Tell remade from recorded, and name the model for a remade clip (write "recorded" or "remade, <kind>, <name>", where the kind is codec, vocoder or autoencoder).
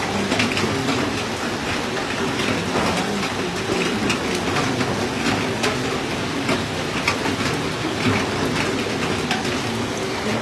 recorded